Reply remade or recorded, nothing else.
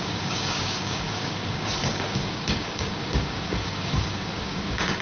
remade